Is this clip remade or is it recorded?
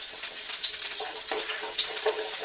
remade